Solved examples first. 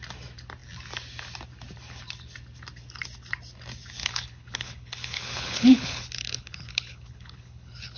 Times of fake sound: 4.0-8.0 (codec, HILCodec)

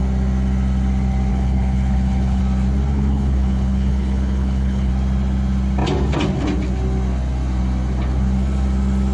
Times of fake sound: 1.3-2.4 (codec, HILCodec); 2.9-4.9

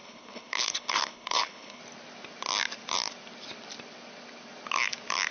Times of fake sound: 0.0-1.8 (codec, HILCodec)

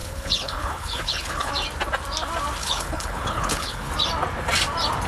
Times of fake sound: 0.0-1.5 (codec, HILCodec); 2.6-3.9